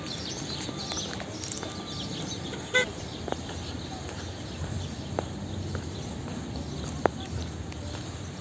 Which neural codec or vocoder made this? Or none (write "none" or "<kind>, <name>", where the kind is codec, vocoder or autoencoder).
none